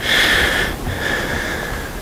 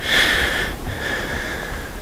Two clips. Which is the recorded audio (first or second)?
first